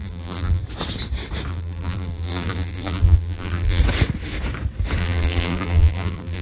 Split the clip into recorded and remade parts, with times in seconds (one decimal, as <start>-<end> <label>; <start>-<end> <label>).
0.0-0.6 remade; 0.6-1.5 recorded; 1.5-3.8 remade; 3.8-5.0 recorded; 5.0-6.4 remade